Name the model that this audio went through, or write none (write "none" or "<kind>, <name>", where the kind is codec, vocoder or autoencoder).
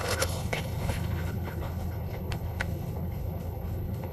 codec, HILCodec